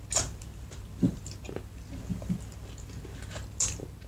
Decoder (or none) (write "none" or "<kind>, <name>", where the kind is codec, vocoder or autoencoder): none